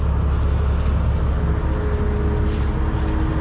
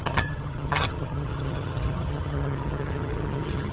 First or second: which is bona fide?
first